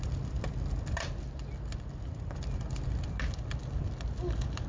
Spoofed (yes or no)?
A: no